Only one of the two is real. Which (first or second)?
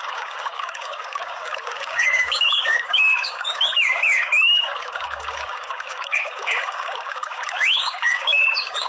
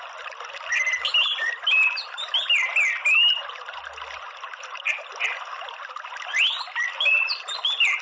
second